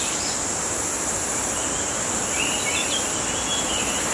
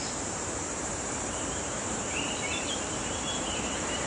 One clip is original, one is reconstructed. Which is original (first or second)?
first